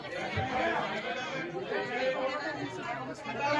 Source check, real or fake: real